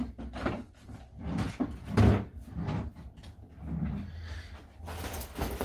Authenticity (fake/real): real